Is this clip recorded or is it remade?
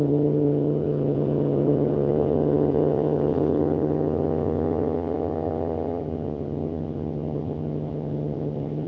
remade